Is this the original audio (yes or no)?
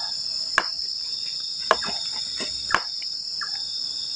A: yes